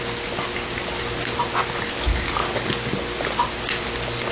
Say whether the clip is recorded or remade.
recorded